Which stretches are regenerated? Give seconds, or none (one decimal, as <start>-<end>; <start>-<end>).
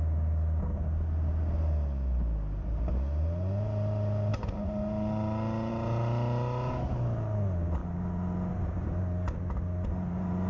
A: none